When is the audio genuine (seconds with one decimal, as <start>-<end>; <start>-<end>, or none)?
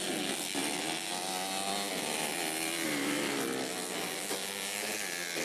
0.0-5.4